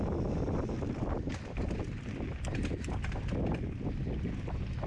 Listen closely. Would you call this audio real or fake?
real